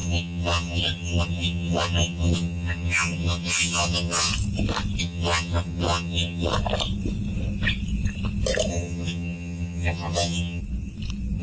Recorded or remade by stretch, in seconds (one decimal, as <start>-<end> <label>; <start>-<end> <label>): 0.0-4.3 remade; 4.3-5.0 recorded; 5.0-6.5 remade; 6.5-8.7 recorded; 8.7-10.6 remade; 10.6-11.4 recorded